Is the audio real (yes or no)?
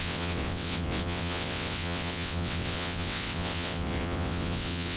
no